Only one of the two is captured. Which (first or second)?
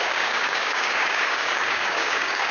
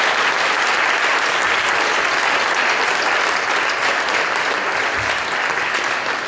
second